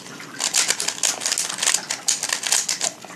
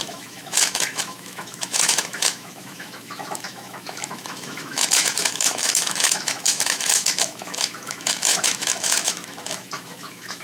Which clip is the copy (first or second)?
second